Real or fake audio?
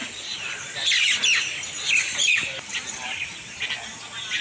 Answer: real